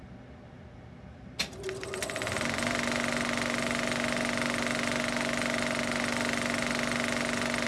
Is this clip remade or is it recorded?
recorded